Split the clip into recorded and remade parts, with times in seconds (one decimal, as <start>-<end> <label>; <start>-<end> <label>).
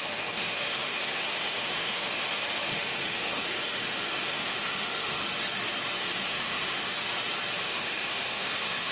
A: 0.0-5.2 remade; 5.2-6.0 recorded; 6.0-6.9 remade; 6.9-7.6 recorded; 7.6-8.9 remade